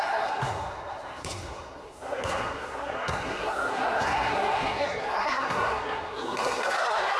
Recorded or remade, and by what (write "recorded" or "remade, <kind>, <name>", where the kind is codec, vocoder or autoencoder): remade, codec, SNAC